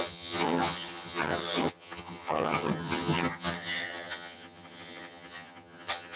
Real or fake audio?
fake